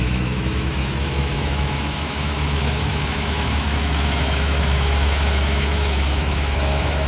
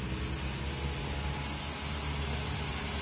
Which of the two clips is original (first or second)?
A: second